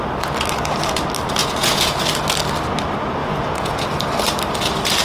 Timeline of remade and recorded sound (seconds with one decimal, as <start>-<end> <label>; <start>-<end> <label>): 0.0-1.4 recorded; 1.4-2.0 remade; 2.0-3.2 recorded; 3.2-3.8 remade; 3.8-5.0 recorded